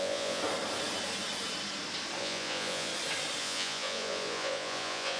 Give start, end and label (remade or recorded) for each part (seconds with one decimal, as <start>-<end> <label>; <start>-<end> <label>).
0.0-0.4 remade; 0.4-2.2 recorded; 2.2-2.9 remade; 2.9-3.4 recorded; 3.4-5.2 remade